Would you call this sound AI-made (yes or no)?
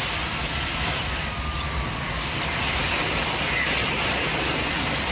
no